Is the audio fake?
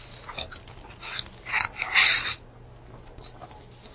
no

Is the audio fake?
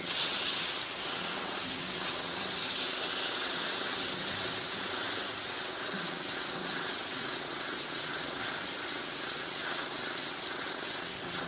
yes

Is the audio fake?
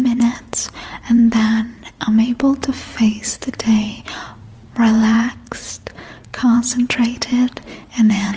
yes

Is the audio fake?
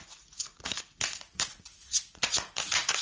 yes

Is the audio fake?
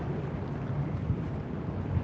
no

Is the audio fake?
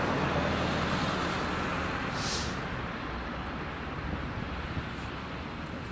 no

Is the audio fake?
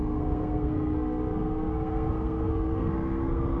yes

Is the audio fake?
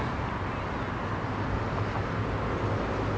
no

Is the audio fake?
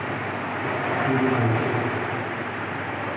no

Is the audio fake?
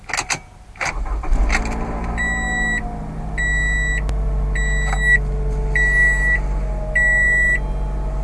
no